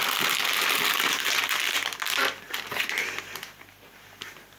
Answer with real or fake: real